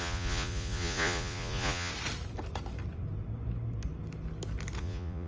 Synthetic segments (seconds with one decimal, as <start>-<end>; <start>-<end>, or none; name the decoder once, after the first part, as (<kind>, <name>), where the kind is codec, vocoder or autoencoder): 0.0-1.9 (vocoder, Vocos); 4.8-5.3